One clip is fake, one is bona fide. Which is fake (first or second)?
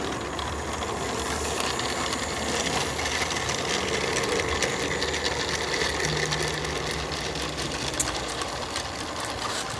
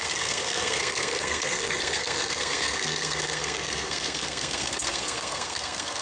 second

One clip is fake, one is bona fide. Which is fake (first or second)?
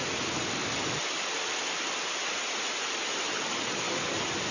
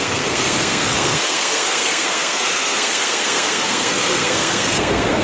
second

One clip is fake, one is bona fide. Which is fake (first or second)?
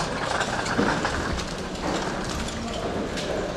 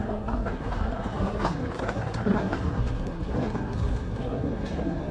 second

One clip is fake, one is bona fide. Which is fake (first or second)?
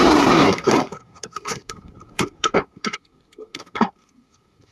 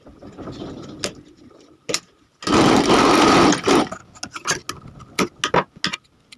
first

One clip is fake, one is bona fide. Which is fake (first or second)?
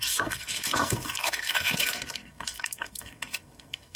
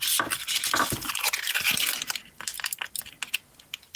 first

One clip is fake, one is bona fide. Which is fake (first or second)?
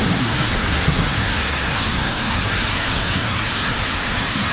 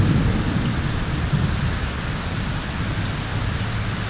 first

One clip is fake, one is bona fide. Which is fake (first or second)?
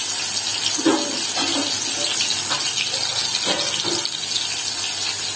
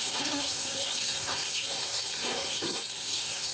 second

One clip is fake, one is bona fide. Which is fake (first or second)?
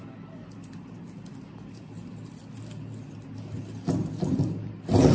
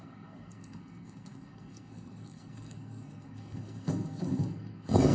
second